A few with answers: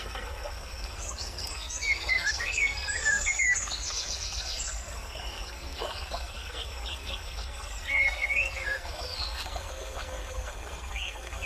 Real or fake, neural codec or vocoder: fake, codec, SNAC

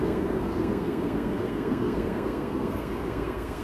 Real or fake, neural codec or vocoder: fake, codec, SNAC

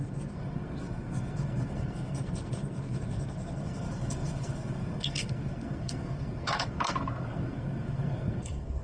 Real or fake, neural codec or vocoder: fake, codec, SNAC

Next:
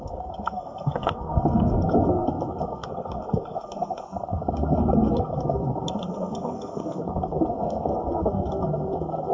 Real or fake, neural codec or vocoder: fake, codec, SNAC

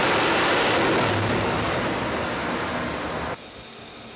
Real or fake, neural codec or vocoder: real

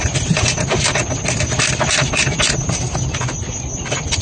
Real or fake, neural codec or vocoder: real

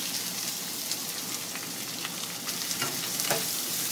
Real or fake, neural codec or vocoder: real